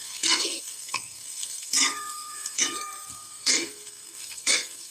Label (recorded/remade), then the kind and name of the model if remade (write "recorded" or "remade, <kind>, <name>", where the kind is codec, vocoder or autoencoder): remade, codec, SNAC